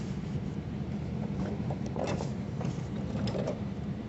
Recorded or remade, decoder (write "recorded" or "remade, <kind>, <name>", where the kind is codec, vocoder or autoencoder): remade, vocoder, BigVGAN v2